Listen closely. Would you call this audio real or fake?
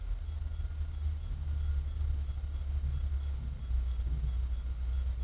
real